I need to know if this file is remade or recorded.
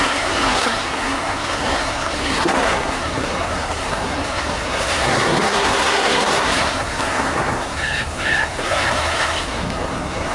remade